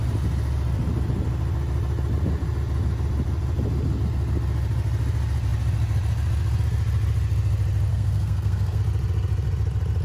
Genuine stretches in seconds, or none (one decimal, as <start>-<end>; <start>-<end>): 0.0-7.9; 8.8-10.0